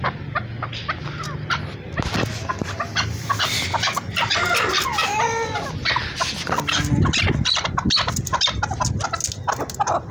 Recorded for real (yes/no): yes